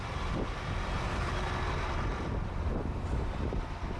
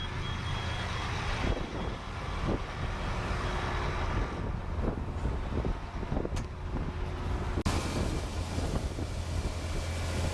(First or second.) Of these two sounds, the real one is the second